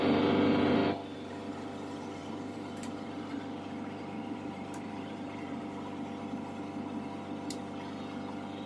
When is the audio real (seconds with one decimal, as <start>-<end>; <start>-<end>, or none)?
0.0-2.2; 5.6-8.7